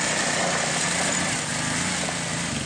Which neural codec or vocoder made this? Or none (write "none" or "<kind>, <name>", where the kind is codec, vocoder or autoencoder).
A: none